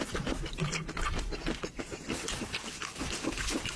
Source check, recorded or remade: remade